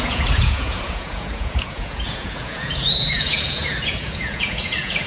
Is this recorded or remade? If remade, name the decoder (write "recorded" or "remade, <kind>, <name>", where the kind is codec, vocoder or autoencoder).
remade, vocoder, Vocos